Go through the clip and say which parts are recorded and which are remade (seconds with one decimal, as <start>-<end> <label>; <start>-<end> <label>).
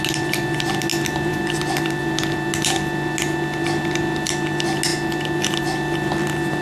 0.0-0.9 recorded; 0.9-2.0 remade; 2.0-6.6 recorded